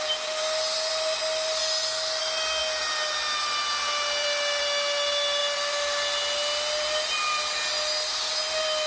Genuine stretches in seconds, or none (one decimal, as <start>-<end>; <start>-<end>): 0.0-8.9